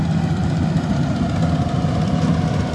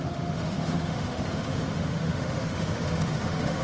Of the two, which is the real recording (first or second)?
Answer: first